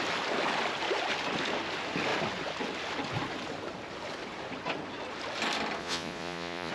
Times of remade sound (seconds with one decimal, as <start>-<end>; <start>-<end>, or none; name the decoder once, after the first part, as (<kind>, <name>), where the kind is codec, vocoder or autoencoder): 5.8-6.7 (vocoder, Vocos)